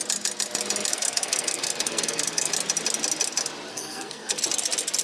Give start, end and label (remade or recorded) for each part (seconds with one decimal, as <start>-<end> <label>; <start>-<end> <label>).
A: 0.0-0.9 recorded; 0.9-2.5 remade; 2.5-3.7 recorded; 3.7-4.4 remade; 4.4-5.0 recorded